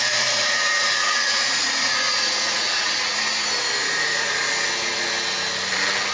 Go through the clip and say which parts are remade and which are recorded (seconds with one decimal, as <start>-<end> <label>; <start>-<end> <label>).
0.0-3.3 remade; 3.3-3.8 recorded; 3.8-4.4 remade; 4.4-6.1 recorded